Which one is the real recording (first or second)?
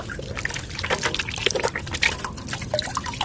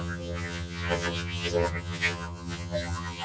first